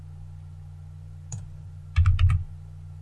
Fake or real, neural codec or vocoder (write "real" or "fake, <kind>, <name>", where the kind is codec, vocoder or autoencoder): real